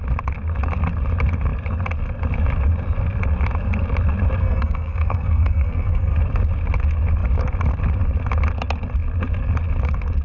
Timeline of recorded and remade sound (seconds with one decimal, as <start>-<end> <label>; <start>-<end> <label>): 0.0-4.4 recorded; 4.4-6.2 remade; 6.2-10.2 recorded